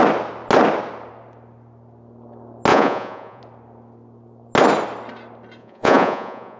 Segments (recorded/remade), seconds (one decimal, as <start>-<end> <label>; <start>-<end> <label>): 0.0-2.7 recorded; 2.7-3.4 remade; 3.4-5.6 recorded; 5.6-6.6 remade